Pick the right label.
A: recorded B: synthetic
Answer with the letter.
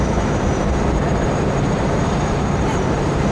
B